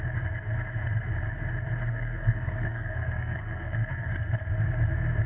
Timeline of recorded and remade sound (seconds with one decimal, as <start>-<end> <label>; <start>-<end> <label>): 0.0-1.9 recorded; 1.9-4.1 remade; 4.1-5.3 recorded